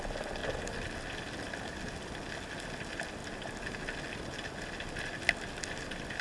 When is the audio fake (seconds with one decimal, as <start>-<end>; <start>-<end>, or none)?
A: none

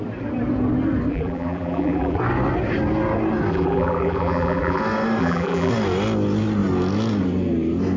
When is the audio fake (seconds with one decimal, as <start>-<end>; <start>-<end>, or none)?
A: 1.1-2.2; 3.5-4.8; 5.2-5.7

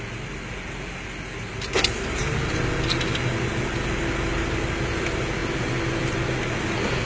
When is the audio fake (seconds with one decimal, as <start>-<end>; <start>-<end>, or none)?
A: none

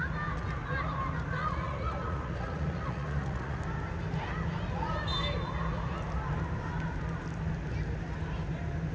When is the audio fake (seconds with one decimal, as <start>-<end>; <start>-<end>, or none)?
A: 1.4-3.6